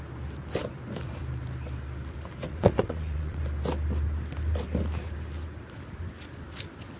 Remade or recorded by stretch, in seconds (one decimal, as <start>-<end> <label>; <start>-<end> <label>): 0.0-2.5 recorded; 2.5-3.4 remade; 3.4-7.0 recorded